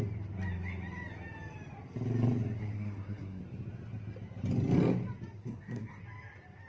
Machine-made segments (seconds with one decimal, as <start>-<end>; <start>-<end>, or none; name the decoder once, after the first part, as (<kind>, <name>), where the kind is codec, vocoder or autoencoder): 2.6-3.4 (codec, SNAC); 5.4-6.0